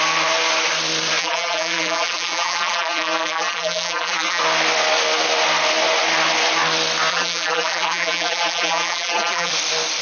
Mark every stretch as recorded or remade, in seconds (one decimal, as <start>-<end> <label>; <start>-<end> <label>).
0.0-1.2 recorded; 1.2-4.4 remade; 4.4-7.1 recorded; 7.1-9.5 remade; 9.5-10.0 recorded